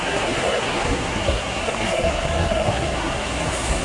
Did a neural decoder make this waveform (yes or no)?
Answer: yes